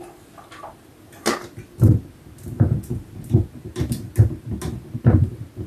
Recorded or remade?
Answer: recorded